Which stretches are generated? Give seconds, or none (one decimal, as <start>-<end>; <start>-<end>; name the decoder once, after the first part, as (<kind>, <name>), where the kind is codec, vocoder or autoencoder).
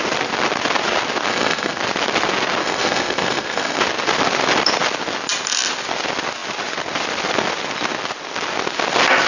1.3-1.8 (codec, SNAC); 2.6-3.8